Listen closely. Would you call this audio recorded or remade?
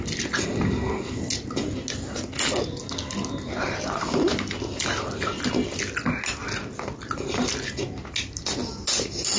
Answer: recorded